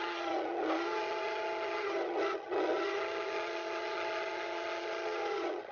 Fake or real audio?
fake